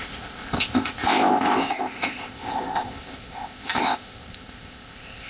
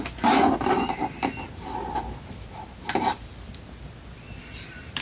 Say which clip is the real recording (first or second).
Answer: second